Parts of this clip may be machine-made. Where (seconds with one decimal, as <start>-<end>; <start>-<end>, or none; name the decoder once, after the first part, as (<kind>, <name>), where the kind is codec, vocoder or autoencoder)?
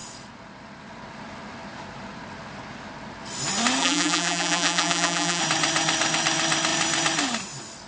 3.8-5.4 (vocoder, BigVGAN v2)